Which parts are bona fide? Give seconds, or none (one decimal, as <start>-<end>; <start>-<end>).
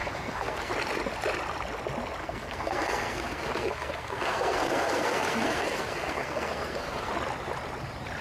0.7-2.2; 7.1-8.2